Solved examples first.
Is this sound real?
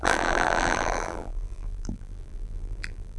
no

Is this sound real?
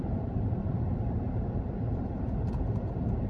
no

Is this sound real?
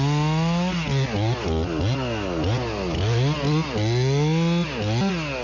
yes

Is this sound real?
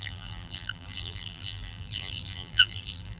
no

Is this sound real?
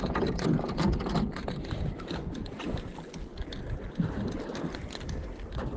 yes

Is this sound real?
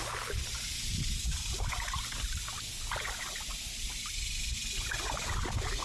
yes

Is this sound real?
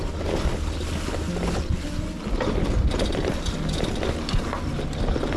yes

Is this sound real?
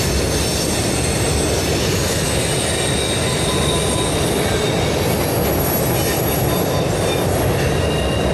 yes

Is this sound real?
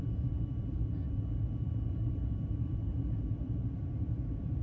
no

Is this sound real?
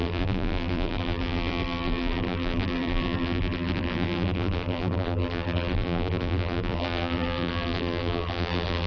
no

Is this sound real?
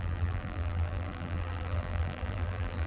no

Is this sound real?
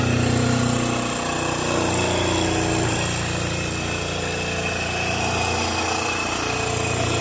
yes